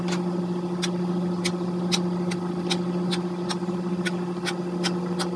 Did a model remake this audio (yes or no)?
no